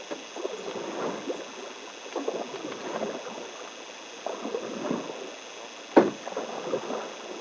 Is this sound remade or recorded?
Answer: recorded